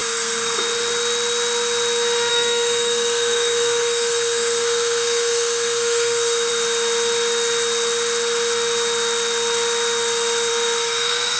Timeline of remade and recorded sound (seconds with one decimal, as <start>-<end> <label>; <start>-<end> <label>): 0.0-0.6 remade; 0.6-2.3 recorded; 2.3-6.5 remade; 6.5-10.5 recorded; 10.5-11.4 remade